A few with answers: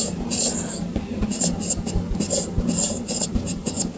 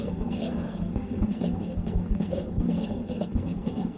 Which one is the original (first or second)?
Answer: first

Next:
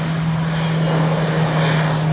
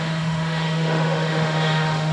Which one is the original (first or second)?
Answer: first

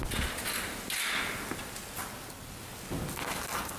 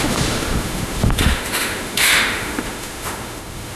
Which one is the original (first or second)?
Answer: first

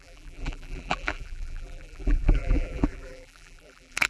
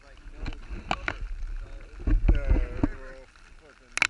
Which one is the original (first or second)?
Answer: second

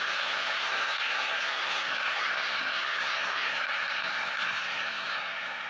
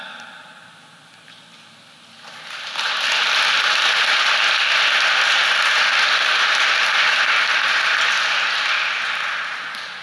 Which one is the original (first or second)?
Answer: second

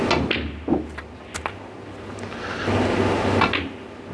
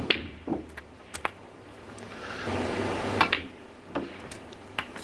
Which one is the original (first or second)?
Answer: first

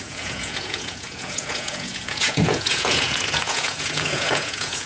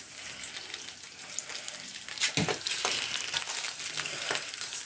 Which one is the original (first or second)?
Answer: second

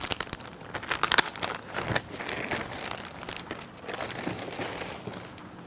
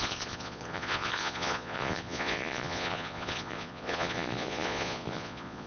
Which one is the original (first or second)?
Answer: first